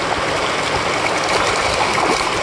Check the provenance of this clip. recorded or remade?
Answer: recorded